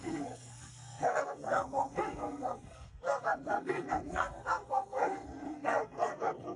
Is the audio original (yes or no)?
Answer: no